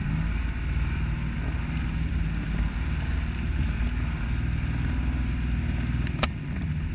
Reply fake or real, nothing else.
real